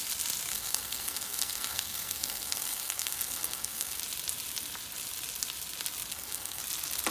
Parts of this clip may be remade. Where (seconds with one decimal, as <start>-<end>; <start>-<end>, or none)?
0.5-4.0; 6.1-6.6